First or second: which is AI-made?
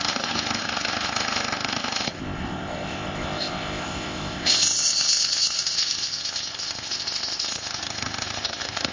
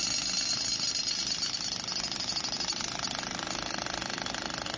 first